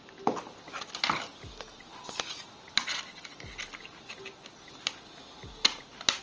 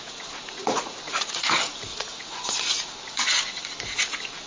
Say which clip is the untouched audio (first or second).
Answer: first